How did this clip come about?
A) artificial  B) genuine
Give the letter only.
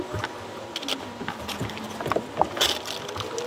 B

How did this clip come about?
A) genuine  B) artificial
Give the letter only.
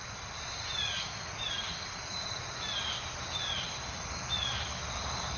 A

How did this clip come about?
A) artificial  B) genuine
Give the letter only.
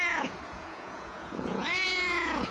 A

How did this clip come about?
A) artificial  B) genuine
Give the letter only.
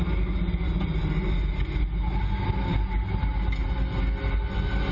B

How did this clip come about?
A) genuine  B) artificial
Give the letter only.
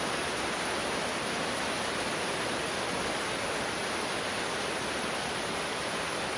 A